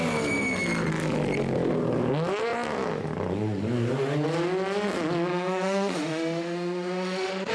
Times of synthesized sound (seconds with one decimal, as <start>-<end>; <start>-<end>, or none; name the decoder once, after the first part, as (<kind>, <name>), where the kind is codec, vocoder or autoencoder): 5.3-7.5 (autoencoder, DAC-VAE)